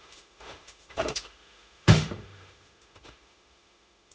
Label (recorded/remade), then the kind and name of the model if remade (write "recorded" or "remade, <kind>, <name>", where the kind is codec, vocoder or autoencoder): remade, autoencoder, DAC-VAE